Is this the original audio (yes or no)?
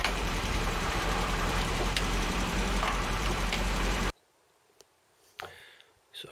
no